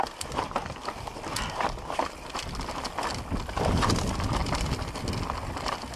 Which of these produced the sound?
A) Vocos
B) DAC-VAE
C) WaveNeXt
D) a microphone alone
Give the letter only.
D